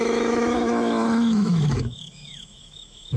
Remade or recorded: remade